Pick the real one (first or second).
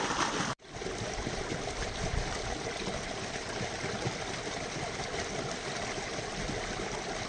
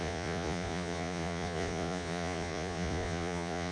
first